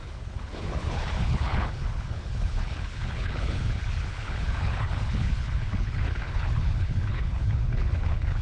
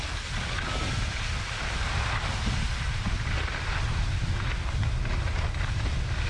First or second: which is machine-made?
first